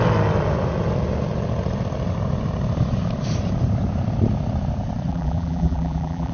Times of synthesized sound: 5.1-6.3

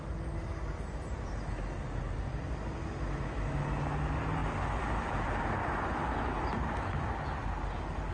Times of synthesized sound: none

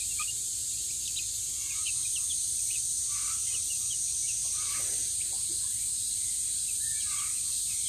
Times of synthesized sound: 0.0-7.9

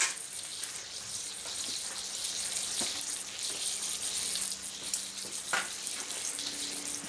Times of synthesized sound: none